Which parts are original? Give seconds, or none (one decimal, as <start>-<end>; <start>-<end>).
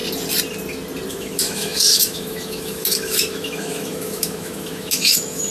0.0-1.1